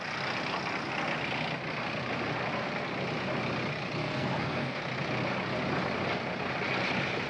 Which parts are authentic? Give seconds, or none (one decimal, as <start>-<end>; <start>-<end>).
0.0-4.0; 4.8-7.3